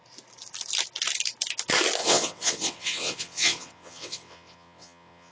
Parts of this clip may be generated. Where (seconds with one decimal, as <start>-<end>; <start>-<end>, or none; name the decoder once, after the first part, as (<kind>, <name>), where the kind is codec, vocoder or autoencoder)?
2.0-5.3 (vocoder, WaveNeXt)